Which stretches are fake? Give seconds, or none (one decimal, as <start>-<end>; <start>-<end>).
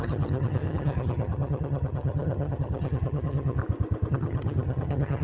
0.0-3.6; 4.1-5.2